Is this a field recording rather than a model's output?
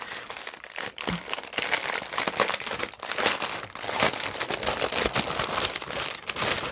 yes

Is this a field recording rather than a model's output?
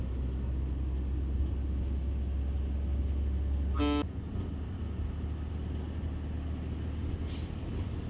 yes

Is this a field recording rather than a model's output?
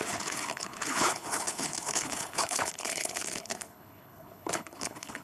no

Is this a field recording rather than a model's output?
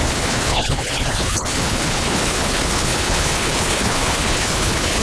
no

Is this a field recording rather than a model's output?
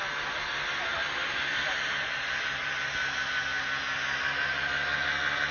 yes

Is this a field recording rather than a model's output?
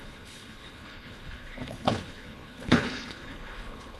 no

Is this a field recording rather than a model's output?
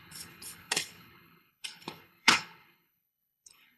no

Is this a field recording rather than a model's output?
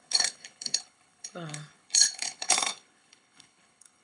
no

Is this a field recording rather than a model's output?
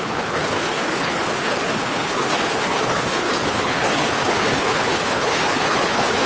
no